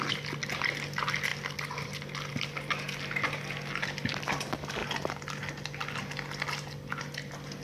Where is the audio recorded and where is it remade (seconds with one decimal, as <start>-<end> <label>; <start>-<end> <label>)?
0.0-7.6 recorded